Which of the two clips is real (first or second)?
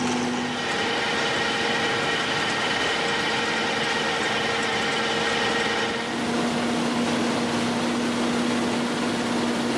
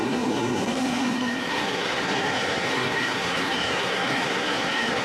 first